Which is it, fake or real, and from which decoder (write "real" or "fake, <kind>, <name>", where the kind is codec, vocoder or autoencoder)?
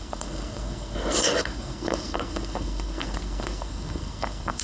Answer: fake, codec, SNAC